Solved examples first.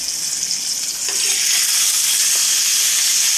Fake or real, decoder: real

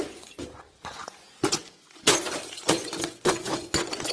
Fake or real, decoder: fake, vocoder, Vocos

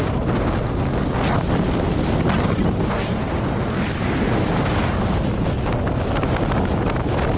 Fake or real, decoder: real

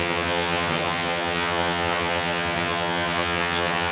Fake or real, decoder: fake, vocoder, HiFi-GAN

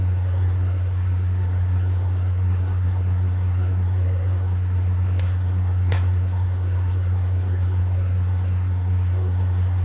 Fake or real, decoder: fake, codec, SNAC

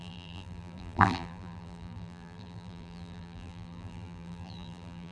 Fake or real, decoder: fake, vocoder, BigVGAN v2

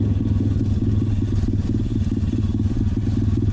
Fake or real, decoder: real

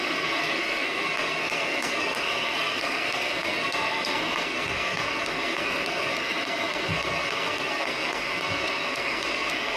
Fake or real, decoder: fake, codec, SNAC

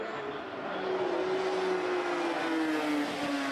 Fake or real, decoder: real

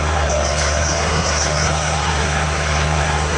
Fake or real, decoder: fake, codec, SNAC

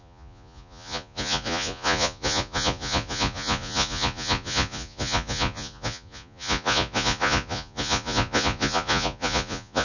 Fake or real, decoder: fake, vocoder, Vocos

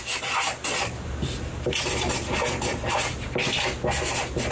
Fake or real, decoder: real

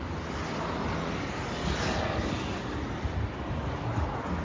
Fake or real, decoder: real